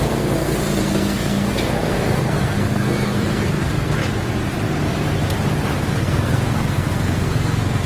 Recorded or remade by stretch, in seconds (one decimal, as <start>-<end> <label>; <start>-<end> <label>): 0.0-4.0 remade; 4.0-5.9 recorded; 5.9-7.9 remade